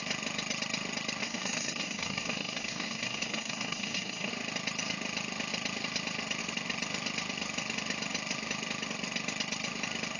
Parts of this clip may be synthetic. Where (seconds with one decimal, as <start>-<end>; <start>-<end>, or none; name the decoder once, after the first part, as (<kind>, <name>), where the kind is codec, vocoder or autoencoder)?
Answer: 1.2-4.3 (codec, SNAC)